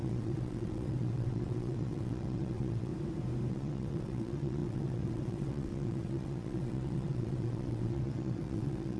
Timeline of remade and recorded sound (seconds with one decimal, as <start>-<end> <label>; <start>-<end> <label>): 0.0-2.9 remade; 2.9-3.5 recorded; 3.5-9.0 remade